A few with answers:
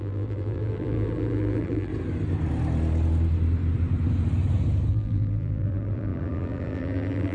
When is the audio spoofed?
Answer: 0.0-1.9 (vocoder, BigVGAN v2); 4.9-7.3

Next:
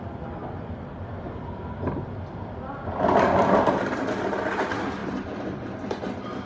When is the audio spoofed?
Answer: none

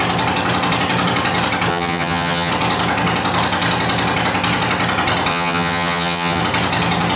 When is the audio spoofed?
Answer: 1.7-2.5 (vocoder, HiFi-GAN); 5.3-6.4

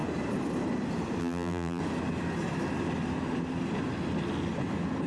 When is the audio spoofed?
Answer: 1.2-1.8 (vocoder, BigVGAN v2)